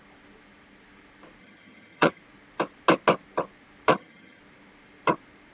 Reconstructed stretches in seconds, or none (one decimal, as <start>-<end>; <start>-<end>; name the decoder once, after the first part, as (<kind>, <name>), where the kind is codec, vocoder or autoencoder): 1.4-2.2 (vocoder, HiFi-GAN); 3.9-4.4